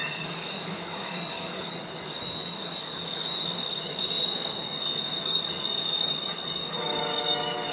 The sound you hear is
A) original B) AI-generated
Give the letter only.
B